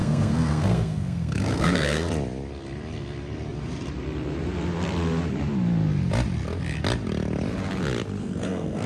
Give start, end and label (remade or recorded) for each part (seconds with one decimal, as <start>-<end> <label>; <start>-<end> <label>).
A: 0.0-2.1 remade; 2.1-8.2 recorded; 8.2-8.9 remade